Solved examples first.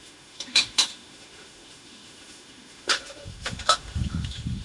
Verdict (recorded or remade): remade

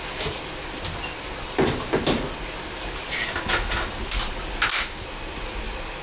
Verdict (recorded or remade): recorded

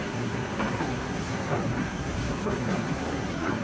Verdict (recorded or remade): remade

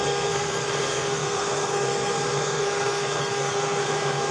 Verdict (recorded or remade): remade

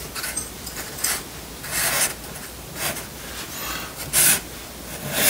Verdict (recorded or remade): recorded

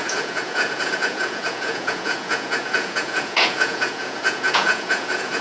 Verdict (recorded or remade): remade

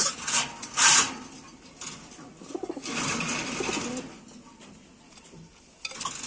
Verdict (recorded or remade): recorded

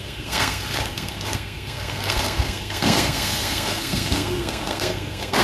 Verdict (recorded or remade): remade